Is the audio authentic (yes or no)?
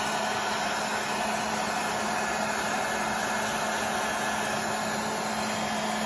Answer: yes